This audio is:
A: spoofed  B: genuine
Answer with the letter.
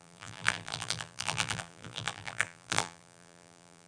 A